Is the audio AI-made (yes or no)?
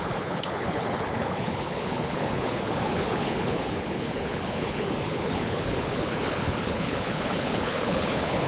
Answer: yes